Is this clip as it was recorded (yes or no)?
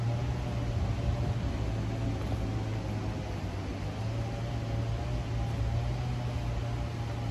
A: yes